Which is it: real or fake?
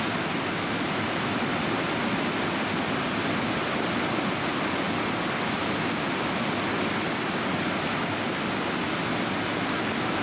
real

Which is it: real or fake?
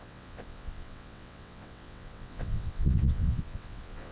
fake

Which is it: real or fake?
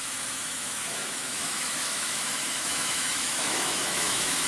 fake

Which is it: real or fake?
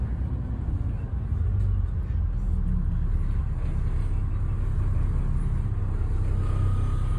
real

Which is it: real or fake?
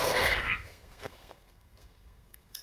fake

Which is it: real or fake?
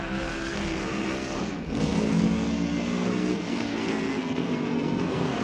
fake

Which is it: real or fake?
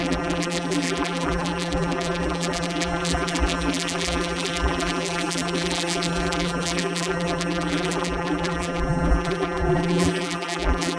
fake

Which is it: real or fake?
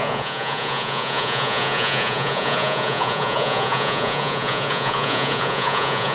fake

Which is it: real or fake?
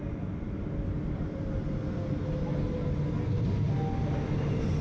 real